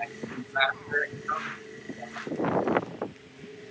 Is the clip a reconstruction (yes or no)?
no